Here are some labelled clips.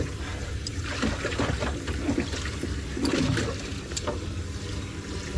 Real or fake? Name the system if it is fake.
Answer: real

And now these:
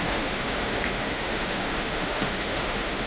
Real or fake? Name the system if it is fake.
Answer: fake, autoencoder, DAC-VAE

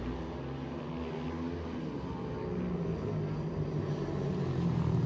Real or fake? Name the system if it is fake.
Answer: real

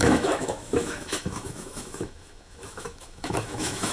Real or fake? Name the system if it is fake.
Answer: fake, autoencoder, DAC-VAE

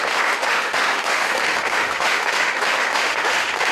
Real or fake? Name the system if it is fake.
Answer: fake, autoencoder, DAC-VAE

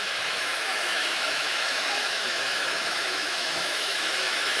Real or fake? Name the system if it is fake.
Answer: fake, autoencoder, DAC-VAE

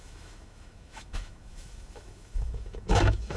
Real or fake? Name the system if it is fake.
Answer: fake, autoencoder, DAC-VAE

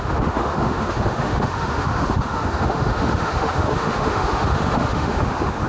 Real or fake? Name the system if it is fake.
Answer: fake, autoencoder, DAC-VAE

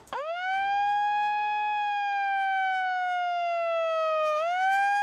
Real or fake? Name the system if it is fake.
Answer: fake, autoencoder, DAC-VAE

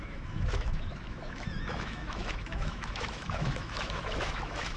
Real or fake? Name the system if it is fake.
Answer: fake, autoencoder, DAC-VAE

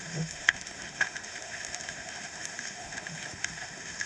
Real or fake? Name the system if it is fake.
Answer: fake, autoencoder, DAC-VAE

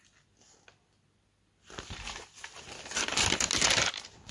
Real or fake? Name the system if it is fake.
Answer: real